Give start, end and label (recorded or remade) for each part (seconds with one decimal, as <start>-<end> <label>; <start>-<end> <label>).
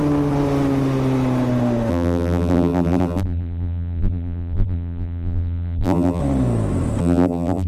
0.0-1.9 recorded; 1.9-6.2 remade; 6.2-7.0 recorded; 7.0-7.7 remade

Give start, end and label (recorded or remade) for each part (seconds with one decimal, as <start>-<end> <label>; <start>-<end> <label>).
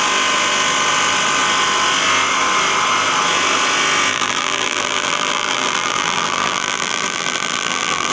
0.0-4.1 recorded; 4.1-8.1 remade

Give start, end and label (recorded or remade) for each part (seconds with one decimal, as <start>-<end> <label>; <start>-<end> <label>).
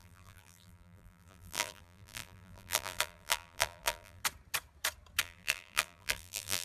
0.0-4.2 remade; 4.2-5.2 recorded; 5.2-6.6 remade